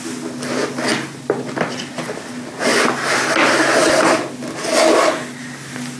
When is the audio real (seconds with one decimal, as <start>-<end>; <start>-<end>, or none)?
0.0-6.0